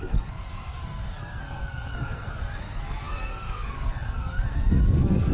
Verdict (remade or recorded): remade